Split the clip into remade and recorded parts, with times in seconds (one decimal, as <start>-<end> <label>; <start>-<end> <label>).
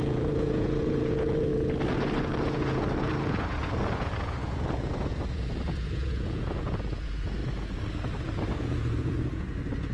0.0-1.5 remade; 1.5-2.2 recorded; 2.2-7.4 remade; 7.4-8.6 recorded; 8.6-9.9 remade